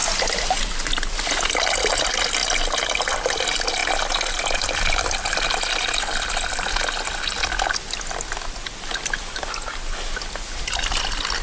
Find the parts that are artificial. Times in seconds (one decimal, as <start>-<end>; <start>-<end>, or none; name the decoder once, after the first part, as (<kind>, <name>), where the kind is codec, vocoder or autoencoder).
none